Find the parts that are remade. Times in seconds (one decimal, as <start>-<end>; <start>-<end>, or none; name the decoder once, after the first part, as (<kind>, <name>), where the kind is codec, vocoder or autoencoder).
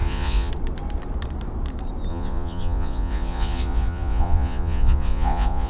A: 0.0-0.5 (vocoder, Vocos); 2.1-5.7